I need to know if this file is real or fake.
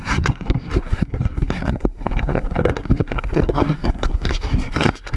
fake